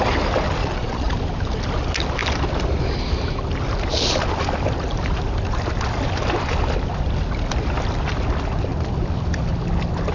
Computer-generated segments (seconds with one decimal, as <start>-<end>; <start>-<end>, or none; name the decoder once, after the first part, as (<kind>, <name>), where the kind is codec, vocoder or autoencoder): 0.6-1.1 (vocoder, Vocos)